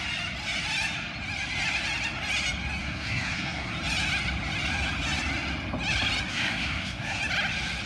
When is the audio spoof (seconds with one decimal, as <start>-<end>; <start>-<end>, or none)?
2.8-3.7; 6.3-7.2